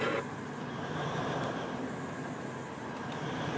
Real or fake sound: real